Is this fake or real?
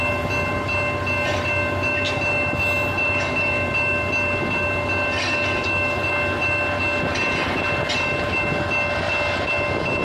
real